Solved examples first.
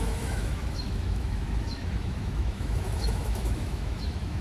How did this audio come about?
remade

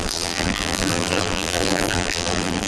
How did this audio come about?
remade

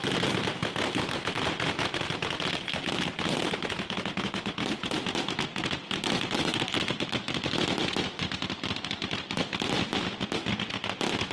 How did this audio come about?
recorded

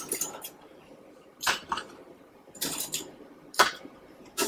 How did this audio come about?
remade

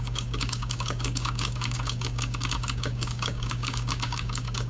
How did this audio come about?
remade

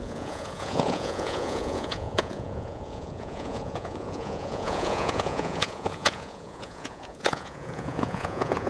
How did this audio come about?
remade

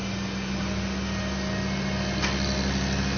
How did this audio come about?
recorded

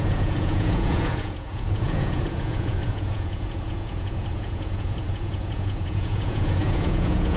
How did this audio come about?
remade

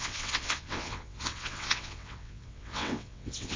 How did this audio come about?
remade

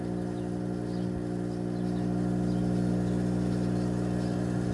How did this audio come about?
recorded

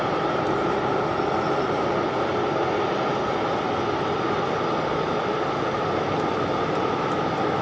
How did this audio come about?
recorded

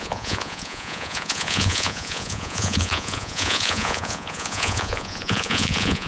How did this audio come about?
remade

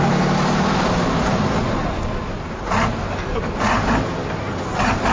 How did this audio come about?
recorded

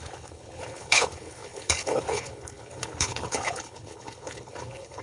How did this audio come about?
remade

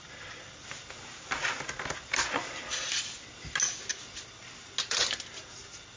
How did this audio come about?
recorded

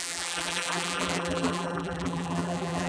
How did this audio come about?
remade